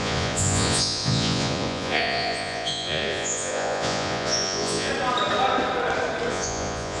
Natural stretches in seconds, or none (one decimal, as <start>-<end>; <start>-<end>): 4.9-6.3